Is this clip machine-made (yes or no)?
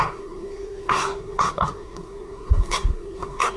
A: yes